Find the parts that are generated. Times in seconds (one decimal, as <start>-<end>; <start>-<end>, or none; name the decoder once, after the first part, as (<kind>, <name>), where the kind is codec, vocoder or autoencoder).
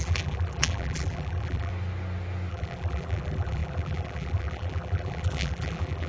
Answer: 0.0-1.7 (vocoder, BigVGAN v2); 2.5-6.1